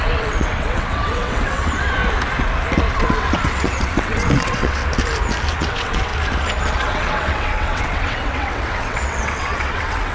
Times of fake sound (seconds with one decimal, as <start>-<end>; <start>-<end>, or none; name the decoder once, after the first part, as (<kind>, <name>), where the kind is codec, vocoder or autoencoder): 0.0-2.0 (vocoder, WaveNeXt); 2.9-4.8; 5.6-6.1; 6.8-10.1